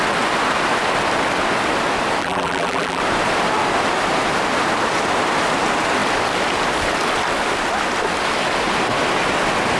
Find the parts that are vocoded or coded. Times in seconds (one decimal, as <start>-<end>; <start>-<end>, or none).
2.2-3.0